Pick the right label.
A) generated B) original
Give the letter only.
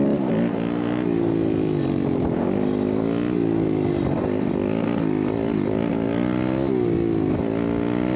B